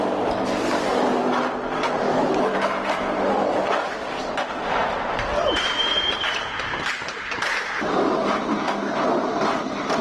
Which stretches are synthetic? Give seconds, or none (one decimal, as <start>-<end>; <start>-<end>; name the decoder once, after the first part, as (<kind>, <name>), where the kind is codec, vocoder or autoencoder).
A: 0.0-0.9 (vocoder, BigVGAN v2); 1.8-8.2; 9.6-10.0